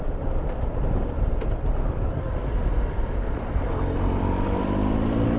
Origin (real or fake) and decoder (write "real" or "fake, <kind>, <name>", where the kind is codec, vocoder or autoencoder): fake, vocoder, BigVGAN v2